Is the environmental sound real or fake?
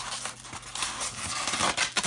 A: real